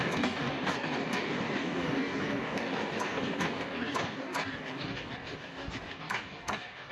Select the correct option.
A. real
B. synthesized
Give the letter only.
B